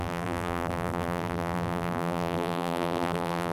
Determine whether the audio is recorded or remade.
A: remade